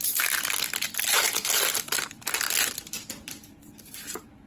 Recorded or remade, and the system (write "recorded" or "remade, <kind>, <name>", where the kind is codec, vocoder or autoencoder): recorded